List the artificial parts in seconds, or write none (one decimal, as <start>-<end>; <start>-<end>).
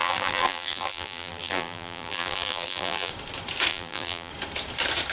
0.0-3.1; 3.7-4.3